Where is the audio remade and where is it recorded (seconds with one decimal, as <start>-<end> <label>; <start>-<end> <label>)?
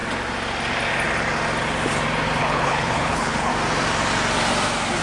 0.0-2.4 recorded; 2.4-3.5 remade; 3.5-5.0 recorded